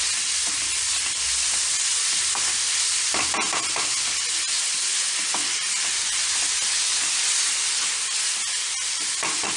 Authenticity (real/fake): real